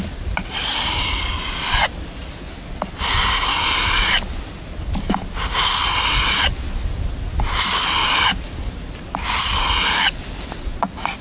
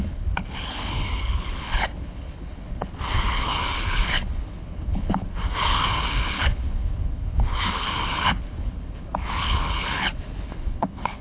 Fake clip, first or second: second